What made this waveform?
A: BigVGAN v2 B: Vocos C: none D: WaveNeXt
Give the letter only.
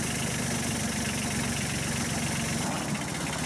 C